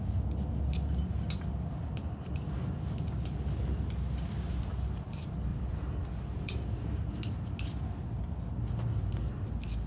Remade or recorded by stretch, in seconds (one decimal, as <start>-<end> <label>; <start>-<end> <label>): 0.0-5.5 recorded; 5.5-7.1 remade; 7.1-9.9 recorded